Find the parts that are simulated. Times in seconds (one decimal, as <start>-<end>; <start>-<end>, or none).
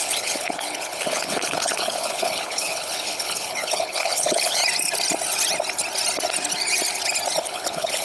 0.0-4.6; 7.4-8.0